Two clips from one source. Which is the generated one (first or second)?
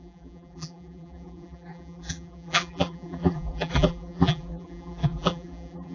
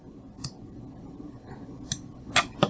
first